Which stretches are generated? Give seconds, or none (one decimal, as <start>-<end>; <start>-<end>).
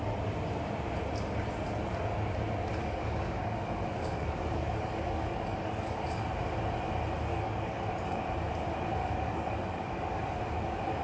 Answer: 2.8-6.2; 7.3-8.2; 9.0-10.4